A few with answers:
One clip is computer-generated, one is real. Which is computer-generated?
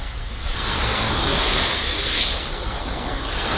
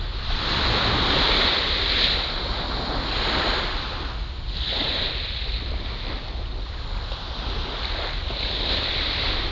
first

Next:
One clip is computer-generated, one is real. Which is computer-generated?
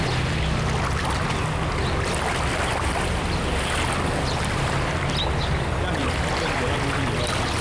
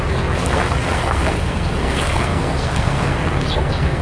second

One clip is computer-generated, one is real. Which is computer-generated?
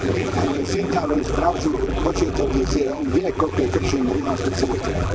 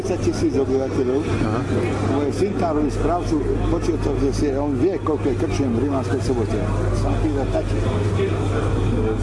first